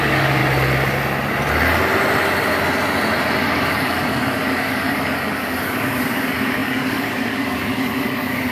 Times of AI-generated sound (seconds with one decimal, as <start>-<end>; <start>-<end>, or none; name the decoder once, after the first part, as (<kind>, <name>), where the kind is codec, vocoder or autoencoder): 0.0-0.4 (codec, DAC); 3.5-8.5